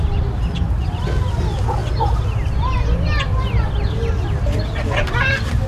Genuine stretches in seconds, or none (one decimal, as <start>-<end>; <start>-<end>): 0.0-5.7